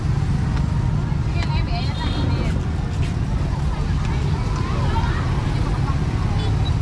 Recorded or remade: recorded